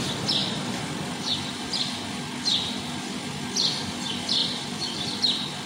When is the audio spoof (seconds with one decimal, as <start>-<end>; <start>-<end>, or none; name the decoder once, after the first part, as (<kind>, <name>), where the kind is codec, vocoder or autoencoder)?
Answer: none